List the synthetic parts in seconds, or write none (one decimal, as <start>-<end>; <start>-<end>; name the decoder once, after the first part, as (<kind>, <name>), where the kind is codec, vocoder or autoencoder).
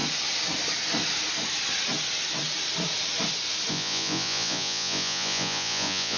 3.7-6.2 (vocoder, Vocos)